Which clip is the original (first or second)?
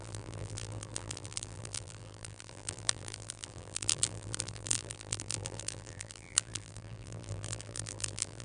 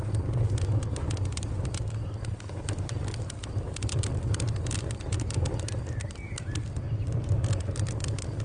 second